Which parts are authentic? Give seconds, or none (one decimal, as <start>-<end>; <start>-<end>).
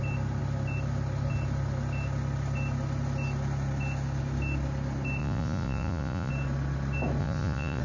0.0-5.2; 6.3-7.2